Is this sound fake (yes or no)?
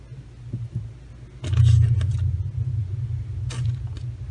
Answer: no